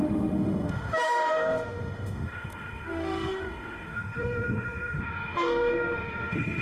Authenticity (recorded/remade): remade